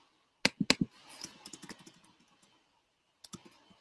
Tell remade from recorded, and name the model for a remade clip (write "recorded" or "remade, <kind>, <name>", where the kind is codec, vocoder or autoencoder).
recorded